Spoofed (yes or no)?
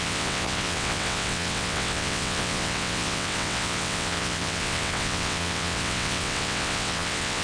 yes